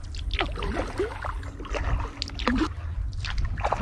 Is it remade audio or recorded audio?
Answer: recorded